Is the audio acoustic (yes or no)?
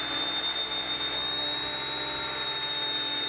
yes